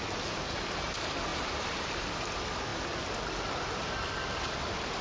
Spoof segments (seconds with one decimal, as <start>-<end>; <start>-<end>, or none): 1.3-2.2